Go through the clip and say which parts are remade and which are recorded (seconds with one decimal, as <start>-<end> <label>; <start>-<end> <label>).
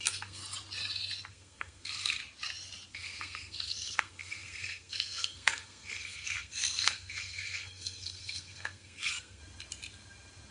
0.0-0.4 remade; 0.4-1.3 recorded; 1.3-2.2 remade; 2.2-2.9 recorded; 2.9-9.4 remade; 9.4-10.5 recorded